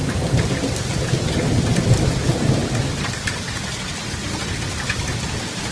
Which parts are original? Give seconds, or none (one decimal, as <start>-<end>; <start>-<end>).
0.0-4.2; 4.7-5.7